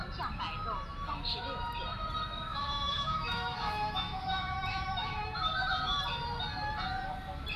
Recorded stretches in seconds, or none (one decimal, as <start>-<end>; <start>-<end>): 0.0-2.5; 5.5-7.6